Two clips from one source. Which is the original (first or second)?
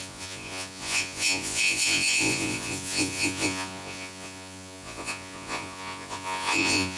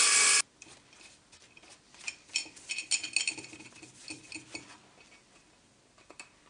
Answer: second